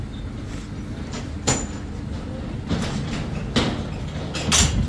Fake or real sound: real